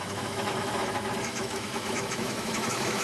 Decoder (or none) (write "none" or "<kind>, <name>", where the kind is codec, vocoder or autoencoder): autoencoder, DAC-VAE